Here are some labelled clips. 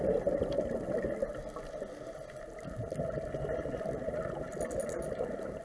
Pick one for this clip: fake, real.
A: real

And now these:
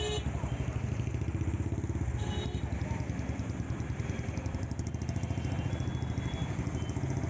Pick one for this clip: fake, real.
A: real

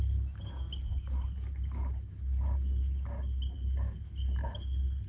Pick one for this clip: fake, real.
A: real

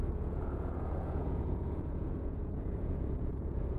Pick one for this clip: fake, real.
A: fake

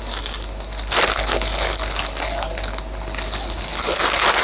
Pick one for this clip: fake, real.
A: real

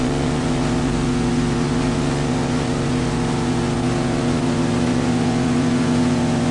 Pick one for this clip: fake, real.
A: fake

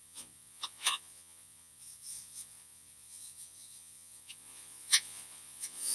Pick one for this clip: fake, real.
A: fake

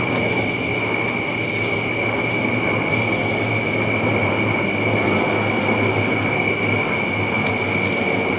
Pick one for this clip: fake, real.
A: real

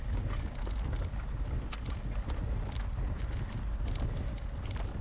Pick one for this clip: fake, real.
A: real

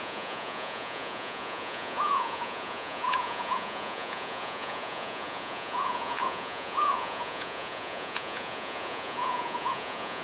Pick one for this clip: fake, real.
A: fake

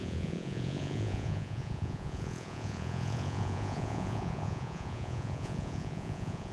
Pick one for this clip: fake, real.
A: fake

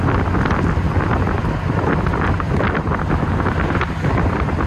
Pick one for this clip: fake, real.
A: real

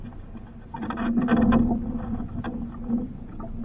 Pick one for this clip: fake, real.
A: real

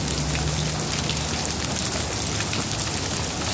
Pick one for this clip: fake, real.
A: real